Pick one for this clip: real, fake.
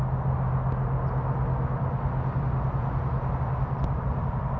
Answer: real